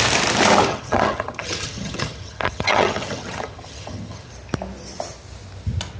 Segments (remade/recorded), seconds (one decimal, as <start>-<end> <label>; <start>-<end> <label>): 0.0-0.7 recorded; 0.7-4.3 remade; 4.3-6.0 recorded